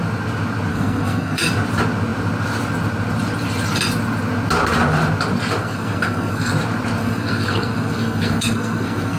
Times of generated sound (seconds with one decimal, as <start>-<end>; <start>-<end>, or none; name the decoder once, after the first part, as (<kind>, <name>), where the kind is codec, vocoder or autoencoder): 0.7-1.5 (codec, SNAC); 5.6-6.5; 7.0-9.2